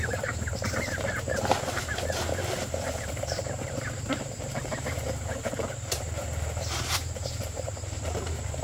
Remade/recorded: remade